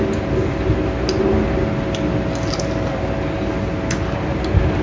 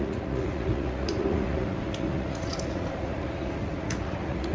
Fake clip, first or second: second